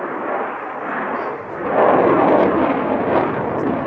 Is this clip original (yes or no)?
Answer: yes